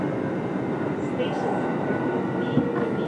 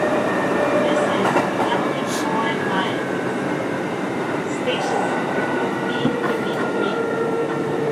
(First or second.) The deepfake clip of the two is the second